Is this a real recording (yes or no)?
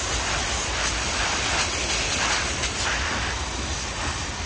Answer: yes